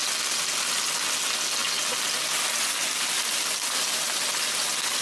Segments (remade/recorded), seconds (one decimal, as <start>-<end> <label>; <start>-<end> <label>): 0.0-5.0 recorded